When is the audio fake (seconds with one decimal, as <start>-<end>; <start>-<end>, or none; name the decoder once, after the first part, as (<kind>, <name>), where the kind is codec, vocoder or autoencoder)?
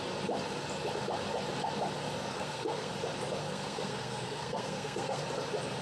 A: 2.3-2.9 (codec, SNAC); 3.4-5.2